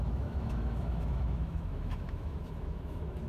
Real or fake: fake